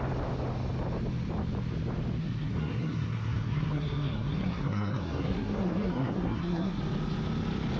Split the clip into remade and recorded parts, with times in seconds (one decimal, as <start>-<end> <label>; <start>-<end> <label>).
0.0-2.2 recorded; 2.2-6.8 remade; 6.8-7.8 recorded